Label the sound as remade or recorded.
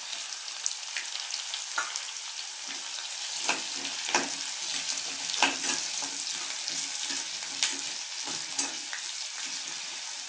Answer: recorded